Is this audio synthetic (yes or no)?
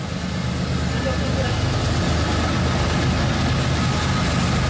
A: no